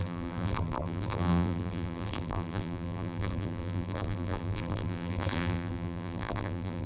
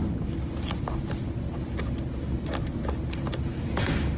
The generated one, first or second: first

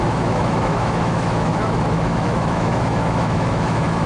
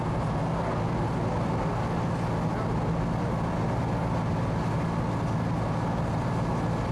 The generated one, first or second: first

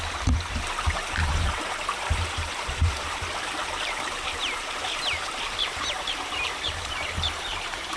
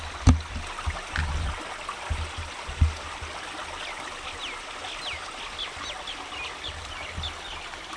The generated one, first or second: first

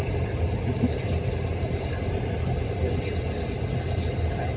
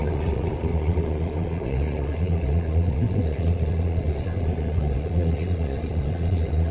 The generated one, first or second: second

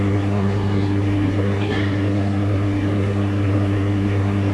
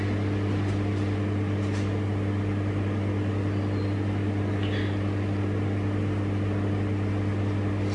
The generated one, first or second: first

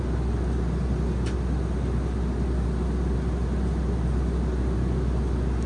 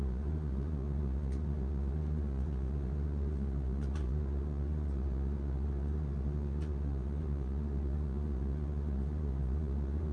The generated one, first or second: second